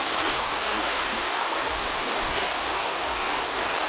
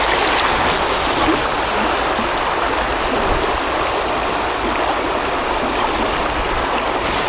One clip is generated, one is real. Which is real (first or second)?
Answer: second